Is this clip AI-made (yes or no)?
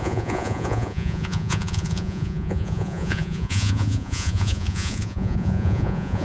yes